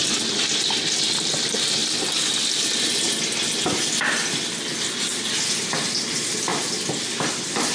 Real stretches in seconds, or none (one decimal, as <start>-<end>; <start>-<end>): 0.0-7.7